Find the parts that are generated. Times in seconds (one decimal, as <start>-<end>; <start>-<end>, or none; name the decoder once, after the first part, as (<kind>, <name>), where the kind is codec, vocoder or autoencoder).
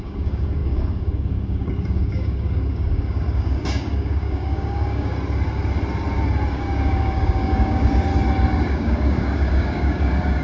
0.0-5.1 (codec, DAC); 6.5-8.1; 8.6-10.4